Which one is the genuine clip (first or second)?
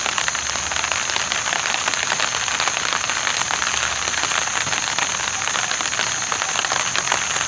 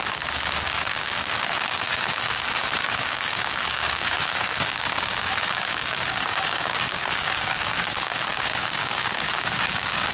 first